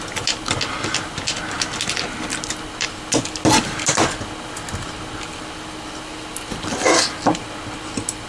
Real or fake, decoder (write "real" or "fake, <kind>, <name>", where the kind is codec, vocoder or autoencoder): real